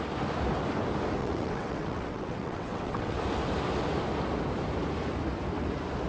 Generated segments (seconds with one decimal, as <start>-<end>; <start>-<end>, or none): 1.2-3.2